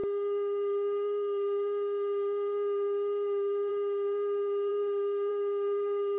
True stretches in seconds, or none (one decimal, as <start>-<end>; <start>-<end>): none